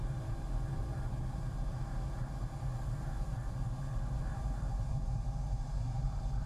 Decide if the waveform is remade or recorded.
remade